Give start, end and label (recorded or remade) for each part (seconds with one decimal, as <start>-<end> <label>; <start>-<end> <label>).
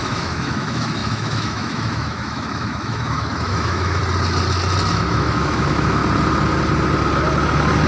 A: 0.0-4.0 remade; 4.0-4.9 recorded; 4.9-6.0 remade; 6.0-7.9 recorded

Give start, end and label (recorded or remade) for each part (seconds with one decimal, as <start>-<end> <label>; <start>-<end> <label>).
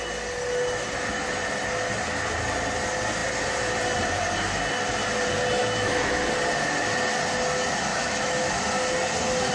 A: 0.0-5.6 recorded; 5.6-6.2 remade; 6.2-7.9 recorded; 7.9-8.5 remade; 8.5-9.5 recorded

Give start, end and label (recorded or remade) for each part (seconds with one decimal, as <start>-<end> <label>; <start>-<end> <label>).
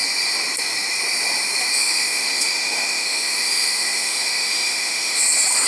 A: 0.0-1.8 recorded; 1.8-5.2 remade; 5.2-5.7 recorded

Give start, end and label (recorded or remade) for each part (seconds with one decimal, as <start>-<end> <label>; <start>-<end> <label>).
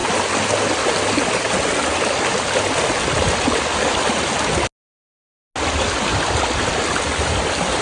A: 0.0-7.8 recorded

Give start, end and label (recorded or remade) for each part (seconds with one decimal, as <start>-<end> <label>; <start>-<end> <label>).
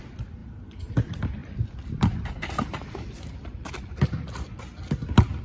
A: 0.0-0.4 recorded; 0.4-0.9 remade; 0.9-1.4 recorded; 1.4-4.6 remade; 4.6-5.4 recorded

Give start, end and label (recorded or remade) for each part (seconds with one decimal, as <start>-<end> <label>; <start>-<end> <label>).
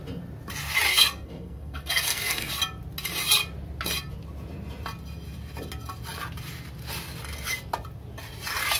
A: 0.0-0.9 recorded; 0.9-2.5 remade; 2.5-8.8 recorded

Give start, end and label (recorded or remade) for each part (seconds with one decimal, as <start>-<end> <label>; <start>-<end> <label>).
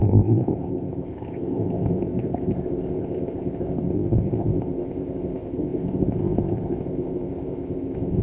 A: 0.0-8.2 remade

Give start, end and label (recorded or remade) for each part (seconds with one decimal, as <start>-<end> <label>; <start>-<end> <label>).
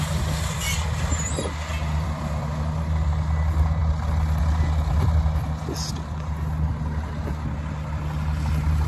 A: 0.0-1.7 recorded; 1.7-3.1 remade; 3.1-8.9 recorded